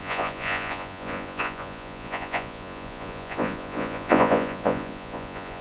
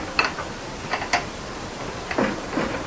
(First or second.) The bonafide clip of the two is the second